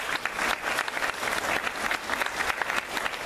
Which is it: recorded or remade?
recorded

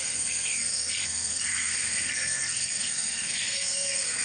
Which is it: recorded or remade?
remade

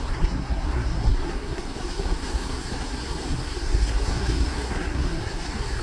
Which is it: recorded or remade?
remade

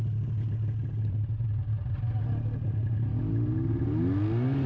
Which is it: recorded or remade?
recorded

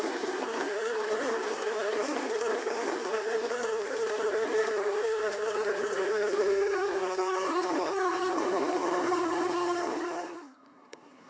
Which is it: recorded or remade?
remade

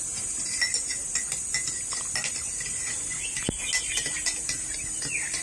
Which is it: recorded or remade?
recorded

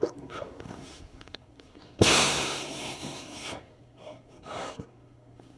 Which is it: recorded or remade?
remade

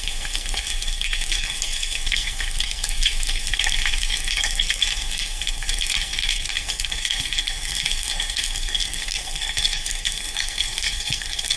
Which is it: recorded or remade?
remade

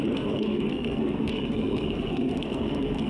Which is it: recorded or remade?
remade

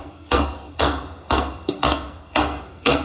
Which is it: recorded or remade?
remade